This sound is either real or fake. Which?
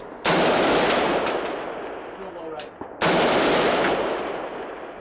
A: real